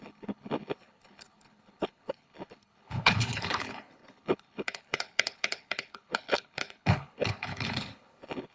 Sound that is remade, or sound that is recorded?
remade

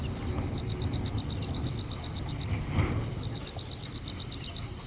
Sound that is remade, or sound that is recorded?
recorded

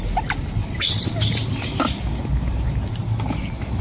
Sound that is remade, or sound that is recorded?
recorded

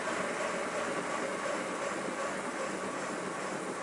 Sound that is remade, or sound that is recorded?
recorded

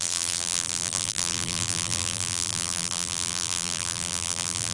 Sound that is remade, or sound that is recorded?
remade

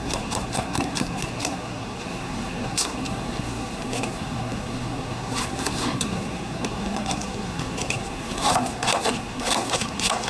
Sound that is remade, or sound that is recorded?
remade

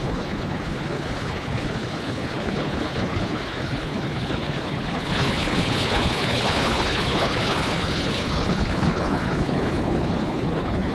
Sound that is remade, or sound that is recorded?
remade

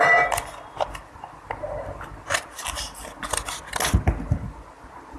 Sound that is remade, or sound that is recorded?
recorded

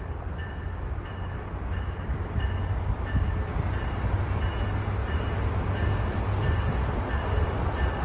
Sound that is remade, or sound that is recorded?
recorded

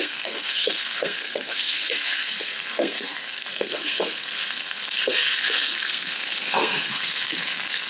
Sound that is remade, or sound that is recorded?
remade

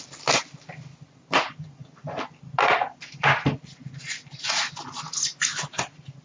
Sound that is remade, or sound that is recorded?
recorded